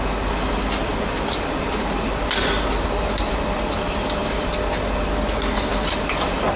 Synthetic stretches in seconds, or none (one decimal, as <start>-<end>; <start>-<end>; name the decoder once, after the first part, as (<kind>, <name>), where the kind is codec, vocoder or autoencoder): none